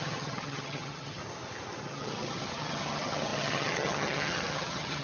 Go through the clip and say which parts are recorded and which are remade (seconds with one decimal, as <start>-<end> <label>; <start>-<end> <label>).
0.0-1.2 remade; 1.2-1.8 recorded; 1.8-5.0 remade